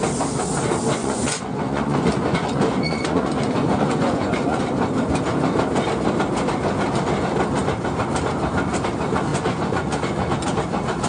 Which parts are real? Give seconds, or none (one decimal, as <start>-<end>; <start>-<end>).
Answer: 0.0-1.0; 4.6-9.3; 10.3-11.1